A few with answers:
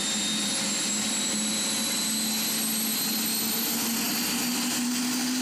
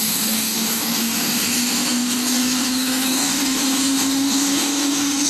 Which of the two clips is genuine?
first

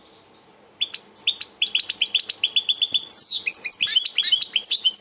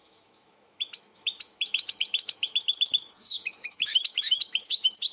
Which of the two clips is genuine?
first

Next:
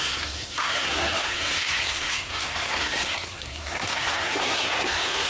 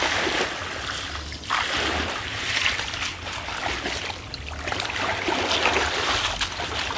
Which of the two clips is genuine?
second